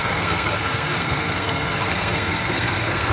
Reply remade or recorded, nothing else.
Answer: remade